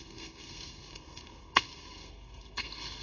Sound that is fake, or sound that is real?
fake